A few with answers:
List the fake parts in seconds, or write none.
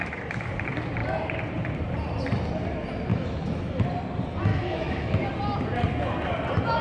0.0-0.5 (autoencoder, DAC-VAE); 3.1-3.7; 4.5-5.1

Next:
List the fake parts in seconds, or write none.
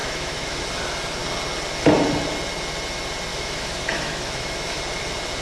0.0-0.6 (autoencoder, DAC-VAE); 3.3-4.8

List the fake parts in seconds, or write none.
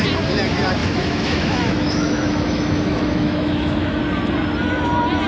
0.8-4.0 (autoencoder, DAC-VAE)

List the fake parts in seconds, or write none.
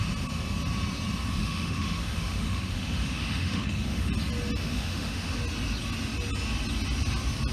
1.4-4.1 (autoencoder, DAC-VAE); 4.6-5.4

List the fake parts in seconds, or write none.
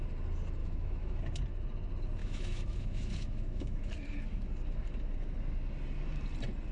0.6-1.2 (autoencoder, DAC-VAE); 2.2-3.9